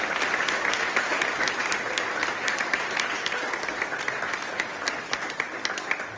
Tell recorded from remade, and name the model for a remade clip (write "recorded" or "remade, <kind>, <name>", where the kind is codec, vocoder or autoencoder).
recorded